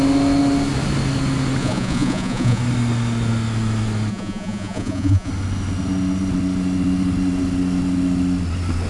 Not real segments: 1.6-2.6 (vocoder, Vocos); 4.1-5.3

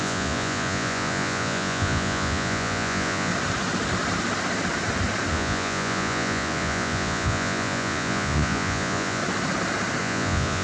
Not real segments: 0.0-3.3 (vocoder, Vocos); 5.3-9.2; 10.0-10.6

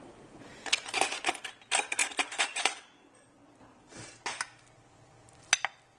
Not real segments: 0.5-1.4 (vocoder, Vocos); 2.0-2.7

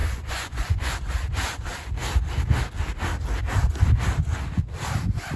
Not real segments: 0.0-0.9 (vocoder, Vocos)

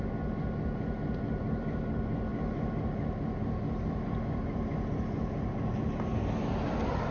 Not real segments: none

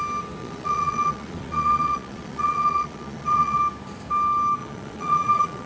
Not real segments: 0.4-3.6 (vocoder, Vocos); 4.6-5.7